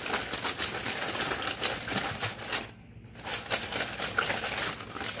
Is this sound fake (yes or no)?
no